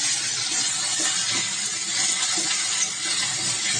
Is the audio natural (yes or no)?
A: yes